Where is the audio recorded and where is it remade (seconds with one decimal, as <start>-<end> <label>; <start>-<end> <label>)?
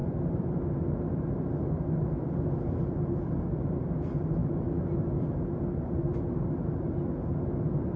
0.0-8.0 recorded